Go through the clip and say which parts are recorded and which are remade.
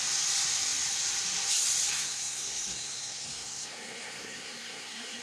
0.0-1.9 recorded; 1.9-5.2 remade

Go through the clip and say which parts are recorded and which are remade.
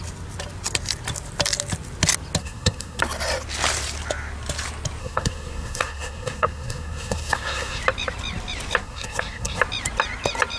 0.0-2.4 recorded; 2.4-3.0 remade; 3.0-5.0 recorded; 5.0-7.8 remade; 7.8-8.8 recorded; 8.8-9.6 remade; 9.6-10.6 recorded